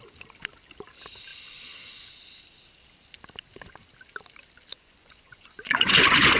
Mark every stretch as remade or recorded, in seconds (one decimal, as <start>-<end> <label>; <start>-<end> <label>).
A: 0.0-4.7 recorded; 4.7-6.4 remade